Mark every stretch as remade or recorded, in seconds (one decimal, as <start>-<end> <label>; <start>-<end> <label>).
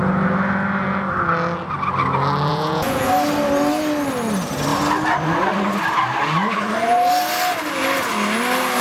0.0-2.5 recorded; 2.5-3.1 remade; 3.1-8.8 recorded